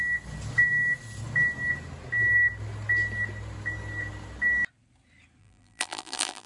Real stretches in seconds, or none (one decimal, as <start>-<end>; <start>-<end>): 0.0-5.4